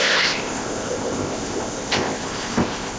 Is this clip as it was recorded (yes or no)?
no